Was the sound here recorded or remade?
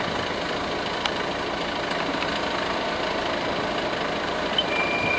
recorded